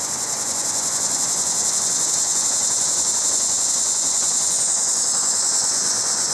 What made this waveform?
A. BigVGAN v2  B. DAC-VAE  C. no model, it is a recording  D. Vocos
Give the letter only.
D